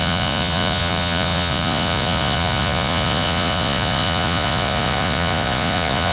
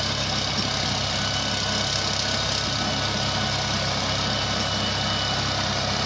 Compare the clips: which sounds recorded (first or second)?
second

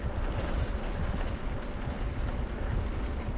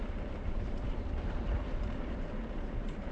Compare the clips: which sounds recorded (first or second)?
first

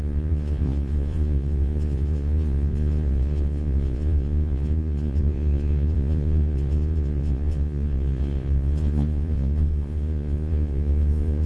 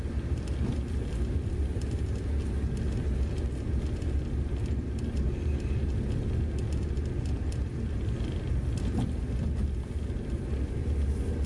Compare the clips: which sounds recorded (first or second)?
second